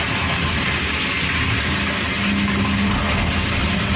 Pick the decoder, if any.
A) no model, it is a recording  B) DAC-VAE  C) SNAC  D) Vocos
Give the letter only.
A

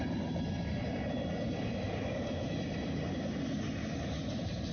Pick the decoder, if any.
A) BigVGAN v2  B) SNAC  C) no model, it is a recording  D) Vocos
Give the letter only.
C